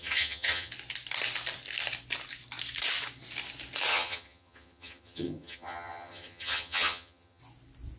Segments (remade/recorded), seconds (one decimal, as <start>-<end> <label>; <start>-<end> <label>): 0.0-0.7 remade; 0.7-3.9 recorded; 3.9-7.4 remade; 7.4-8.0 recorded